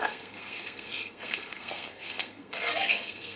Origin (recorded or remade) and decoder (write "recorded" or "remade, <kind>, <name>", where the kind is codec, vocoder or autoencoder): remade, codec, SNAC